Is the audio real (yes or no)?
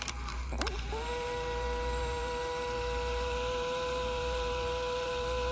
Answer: no